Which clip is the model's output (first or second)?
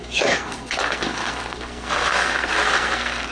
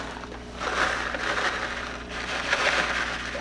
first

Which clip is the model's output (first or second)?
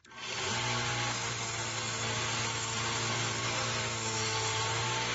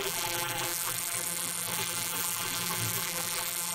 second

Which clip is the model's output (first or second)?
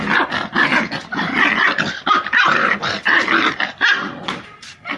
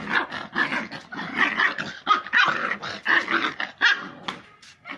first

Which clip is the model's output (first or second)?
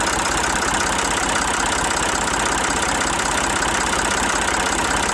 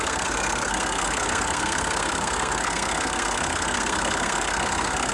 second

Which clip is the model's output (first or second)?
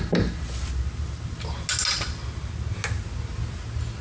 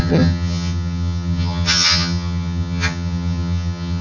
second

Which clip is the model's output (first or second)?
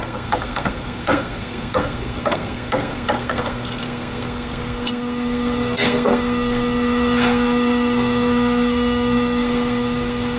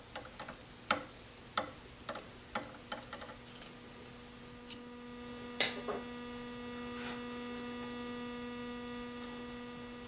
first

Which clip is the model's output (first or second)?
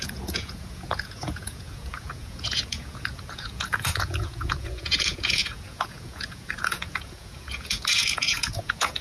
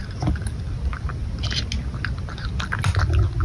first